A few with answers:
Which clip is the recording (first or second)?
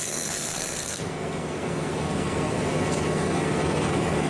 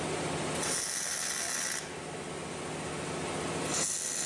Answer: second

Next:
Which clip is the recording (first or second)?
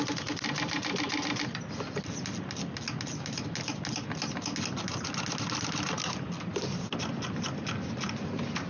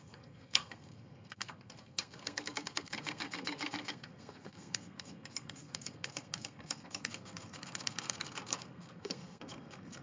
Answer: first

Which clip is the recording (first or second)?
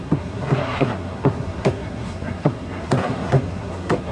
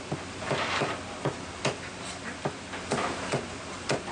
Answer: second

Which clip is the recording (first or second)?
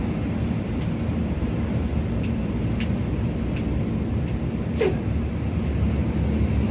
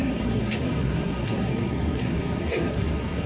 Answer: first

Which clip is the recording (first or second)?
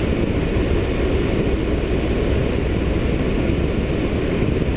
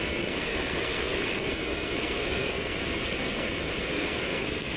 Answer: first